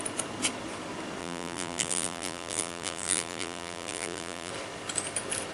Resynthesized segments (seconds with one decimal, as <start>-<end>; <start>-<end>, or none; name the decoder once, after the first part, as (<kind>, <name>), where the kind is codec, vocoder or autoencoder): 1.2-4.5 (vocoder, BigVGAN v2)